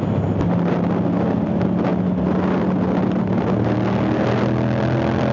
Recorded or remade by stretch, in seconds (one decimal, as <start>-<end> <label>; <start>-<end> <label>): 0.0-5.3 recorded